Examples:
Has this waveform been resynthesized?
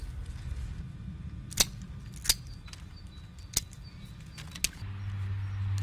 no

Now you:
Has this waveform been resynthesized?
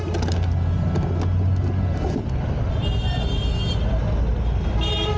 no